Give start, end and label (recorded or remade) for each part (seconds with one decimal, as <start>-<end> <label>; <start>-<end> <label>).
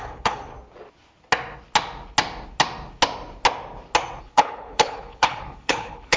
0.0-0.5 remade; 0.5-4.2 recorded; 4.2-6.2 remade